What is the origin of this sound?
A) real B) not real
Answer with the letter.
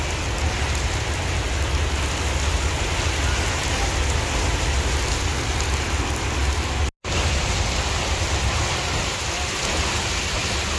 A